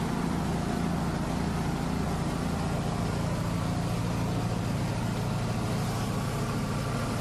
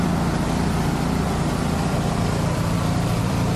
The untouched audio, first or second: first